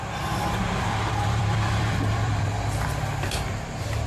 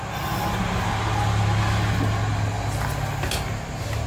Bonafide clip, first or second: second